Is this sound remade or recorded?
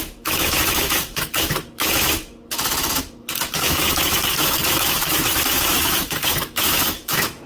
remade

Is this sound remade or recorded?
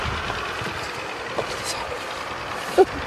recorded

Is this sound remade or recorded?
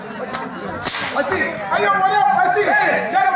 recorded